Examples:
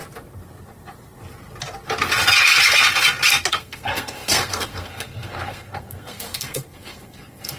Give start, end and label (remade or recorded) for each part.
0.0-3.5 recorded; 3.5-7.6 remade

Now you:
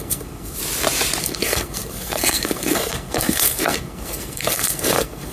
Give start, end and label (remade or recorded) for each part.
0.0-0.6 remade; 0.6-1.2 recorded; 1.2-5.3 remade

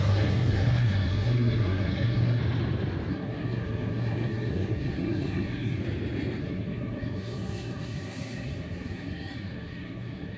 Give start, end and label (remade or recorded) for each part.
0.0-2.4 remade; 2.4-3.1 recorded; 3.1-5.8 remade; 5.8-6.4 recorded; 6.4-10.4 remade

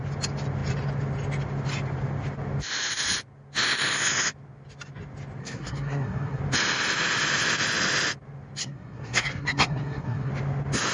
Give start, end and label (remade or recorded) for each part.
0.0-5.4 recorded; 5.4-6.4 remade; 6.4-8.6 recorded; 8.6-10.3 remade; 10.3-10.9 recorded

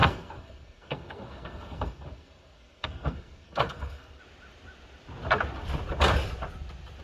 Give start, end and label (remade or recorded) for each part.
0.0-4.2 remade; 4.2-7.0 recorded

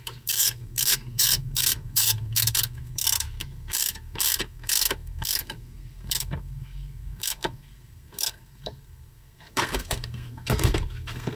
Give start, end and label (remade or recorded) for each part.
0.0-11.4 remade

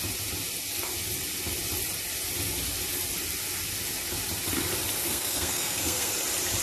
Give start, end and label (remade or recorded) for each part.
0.0-5.0 recorded; 5.0-6.1 remade; 6.1-6.6 recorded

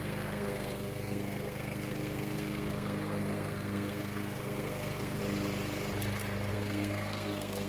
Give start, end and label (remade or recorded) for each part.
0.0-5.2 remade; 5.2-6.5 recorded; 6.5-7.7 remade